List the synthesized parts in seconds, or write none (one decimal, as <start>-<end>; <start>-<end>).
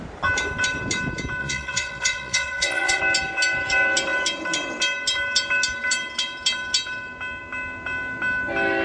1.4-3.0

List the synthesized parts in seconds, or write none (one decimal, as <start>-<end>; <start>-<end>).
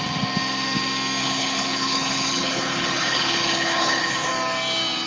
1.2-4.3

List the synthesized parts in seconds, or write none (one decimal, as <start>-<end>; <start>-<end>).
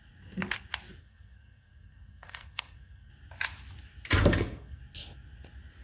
1.0-3.1; 4.2-4.8